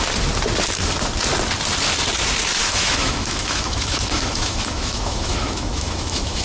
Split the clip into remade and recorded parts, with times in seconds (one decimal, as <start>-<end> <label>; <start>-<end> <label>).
0.0-2.6 recorded; 2.6-6.4 remade